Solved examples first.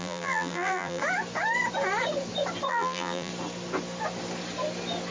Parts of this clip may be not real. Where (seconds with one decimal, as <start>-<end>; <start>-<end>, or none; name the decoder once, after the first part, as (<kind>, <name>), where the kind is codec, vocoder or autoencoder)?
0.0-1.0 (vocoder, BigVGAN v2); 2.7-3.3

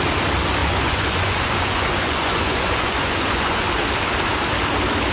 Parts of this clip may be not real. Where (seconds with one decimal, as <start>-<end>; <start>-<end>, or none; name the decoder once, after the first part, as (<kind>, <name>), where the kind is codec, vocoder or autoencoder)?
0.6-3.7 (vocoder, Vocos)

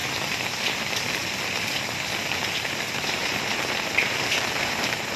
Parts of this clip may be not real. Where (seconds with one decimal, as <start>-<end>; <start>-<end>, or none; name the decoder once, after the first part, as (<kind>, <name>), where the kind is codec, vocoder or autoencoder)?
2.9-5.2 (vocoder, BigVGAN v2)

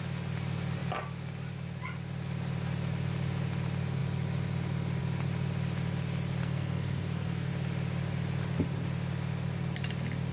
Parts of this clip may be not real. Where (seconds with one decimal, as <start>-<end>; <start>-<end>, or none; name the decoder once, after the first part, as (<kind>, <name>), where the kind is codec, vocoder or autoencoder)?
6.4-7.5 (codec, SNAC)